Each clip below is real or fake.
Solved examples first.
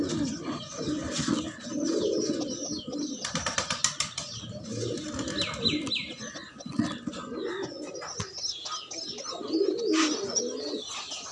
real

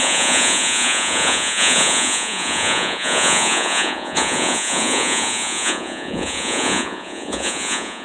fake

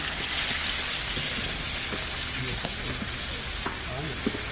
real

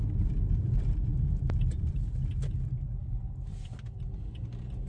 real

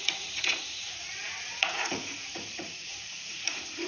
fake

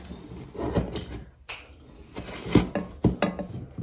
real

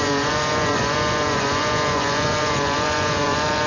fake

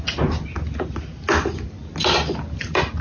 real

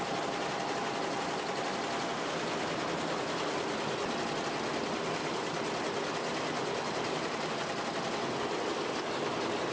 real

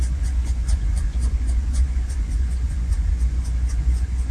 fake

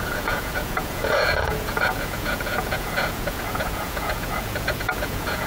fake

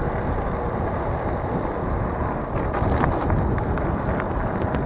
real